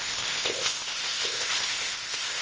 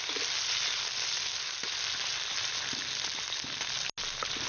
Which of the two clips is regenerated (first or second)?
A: first